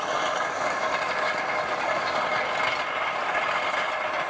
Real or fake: real